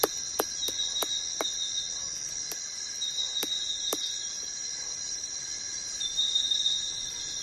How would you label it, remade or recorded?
recorded